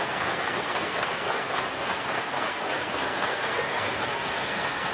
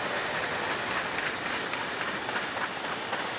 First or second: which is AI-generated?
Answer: first